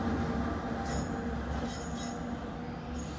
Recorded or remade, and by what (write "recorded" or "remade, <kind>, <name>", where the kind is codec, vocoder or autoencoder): recorded